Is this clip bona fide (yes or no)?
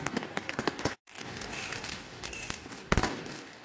no